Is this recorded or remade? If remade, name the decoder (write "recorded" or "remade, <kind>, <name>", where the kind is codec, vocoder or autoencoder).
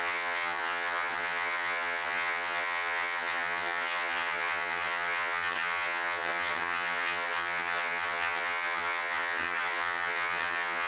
remade, vocoder, HiFi-GAN